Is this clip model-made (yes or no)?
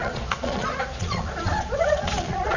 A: yes